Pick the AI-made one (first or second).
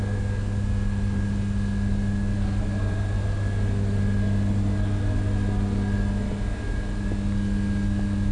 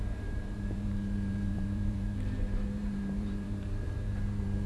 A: second